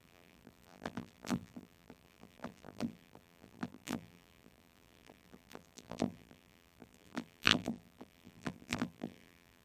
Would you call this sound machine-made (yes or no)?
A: yes